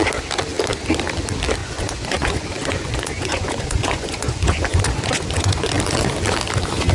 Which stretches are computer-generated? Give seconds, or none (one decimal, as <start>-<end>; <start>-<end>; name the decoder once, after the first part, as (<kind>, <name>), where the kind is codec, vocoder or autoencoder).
1.6-5.7 (vocoder, Vocos)